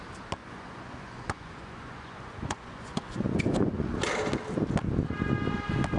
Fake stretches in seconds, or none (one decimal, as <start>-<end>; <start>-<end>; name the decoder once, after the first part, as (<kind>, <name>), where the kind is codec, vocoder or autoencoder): 0.4-4.0 (vocoder, Vocos)